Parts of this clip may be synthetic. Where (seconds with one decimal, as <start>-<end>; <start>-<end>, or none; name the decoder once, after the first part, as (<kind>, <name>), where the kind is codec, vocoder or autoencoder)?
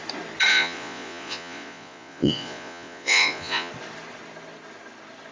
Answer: 0.5-3.7 (vocoder, Vocos)